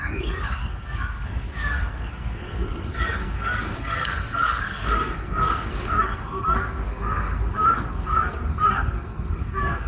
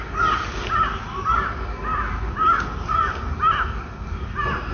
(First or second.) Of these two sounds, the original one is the second